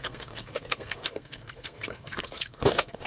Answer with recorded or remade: remade